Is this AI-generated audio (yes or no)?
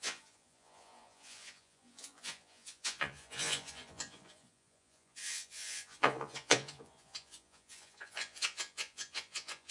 yes